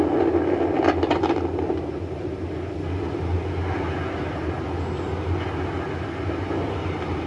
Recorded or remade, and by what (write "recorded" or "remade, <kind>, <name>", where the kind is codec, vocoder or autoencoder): recorded